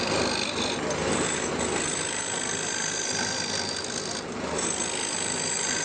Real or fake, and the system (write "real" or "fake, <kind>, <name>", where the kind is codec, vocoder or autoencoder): real